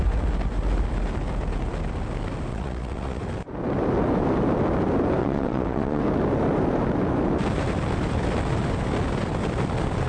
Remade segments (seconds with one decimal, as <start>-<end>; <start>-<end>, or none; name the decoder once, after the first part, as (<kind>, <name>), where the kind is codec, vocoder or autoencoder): 2.5-3.2 (vocoder, WaveNeXt); 5.2-6.0